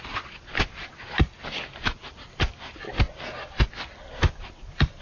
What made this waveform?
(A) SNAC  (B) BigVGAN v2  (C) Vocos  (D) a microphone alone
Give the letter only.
D